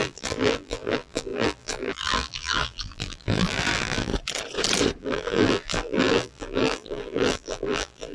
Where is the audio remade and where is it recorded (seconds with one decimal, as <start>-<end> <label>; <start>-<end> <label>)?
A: 0.0-4.1 remade; 4.1-5.0 recorded; 5.0-8.1 remade